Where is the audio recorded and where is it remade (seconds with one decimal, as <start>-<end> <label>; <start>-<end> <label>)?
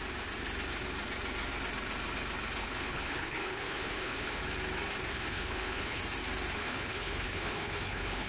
0.0-2.6 recorded; 2.6-4.4 remade; 4.4-5.1 recorded; 5.1-6.0 remade; 6.0-6.6 recorded; 6.6-8.3 remade